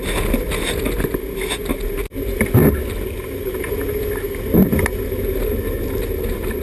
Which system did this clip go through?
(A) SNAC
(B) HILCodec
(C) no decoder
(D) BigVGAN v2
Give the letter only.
C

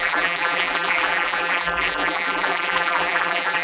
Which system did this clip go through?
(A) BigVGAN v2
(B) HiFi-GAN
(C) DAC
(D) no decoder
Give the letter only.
A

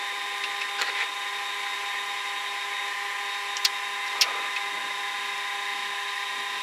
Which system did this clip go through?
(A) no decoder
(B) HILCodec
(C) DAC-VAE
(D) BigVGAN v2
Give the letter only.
A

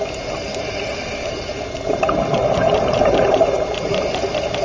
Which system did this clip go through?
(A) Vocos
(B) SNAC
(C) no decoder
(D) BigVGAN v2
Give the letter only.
D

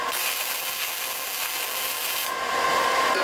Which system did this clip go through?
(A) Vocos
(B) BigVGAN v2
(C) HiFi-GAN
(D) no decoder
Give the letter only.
D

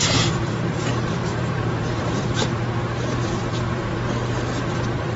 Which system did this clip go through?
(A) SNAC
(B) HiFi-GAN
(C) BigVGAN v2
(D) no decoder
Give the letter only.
C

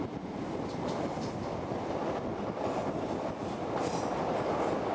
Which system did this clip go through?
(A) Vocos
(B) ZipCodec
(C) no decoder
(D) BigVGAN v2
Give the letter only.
C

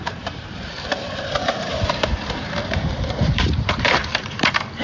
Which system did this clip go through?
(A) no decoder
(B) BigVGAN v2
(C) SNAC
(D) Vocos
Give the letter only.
B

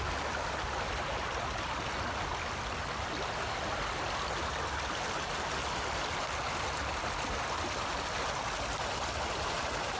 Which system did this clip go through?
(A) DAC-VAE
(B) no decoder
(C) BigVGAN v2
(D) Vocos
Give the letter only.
B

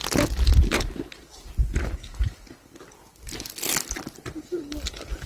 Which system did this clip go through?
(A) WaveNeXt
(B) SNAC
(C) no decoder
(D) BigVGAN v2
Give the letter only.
D